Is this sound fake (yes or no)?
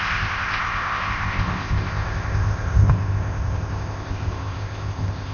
yes